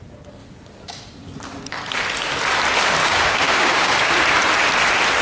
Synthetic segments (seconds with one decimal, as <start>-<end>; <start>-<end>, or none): 3.0-4.1